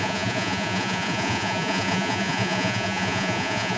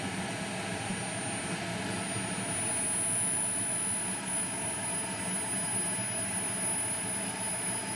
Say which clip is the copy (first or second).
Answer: first